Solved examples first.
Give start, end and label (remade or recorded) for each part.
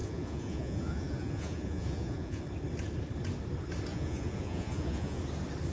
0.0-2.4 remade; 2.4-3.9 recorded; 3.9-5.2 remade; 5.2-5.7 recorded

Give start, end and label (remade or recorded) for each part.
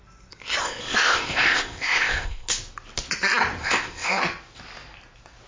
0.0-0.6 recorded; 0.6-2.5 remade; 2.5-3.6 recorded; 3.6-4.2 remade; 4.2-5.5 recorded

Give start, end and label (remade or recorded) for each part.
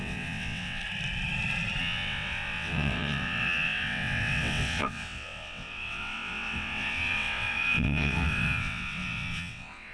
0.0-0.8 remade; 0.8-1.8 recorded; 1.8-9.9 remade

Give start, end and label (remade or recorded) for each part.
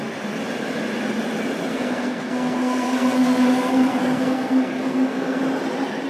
0.0-1.7 recorded; 1.7-5.4 remade; 5.4-6.1 recorded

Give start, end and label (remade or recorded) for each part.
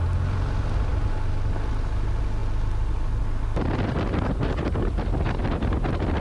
0.0-6.2 recorded